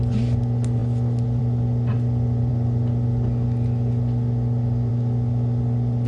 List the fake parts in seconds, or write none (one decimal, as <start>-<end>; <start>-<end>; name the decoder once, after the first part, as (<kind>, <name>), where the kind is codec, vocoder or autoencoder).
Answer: none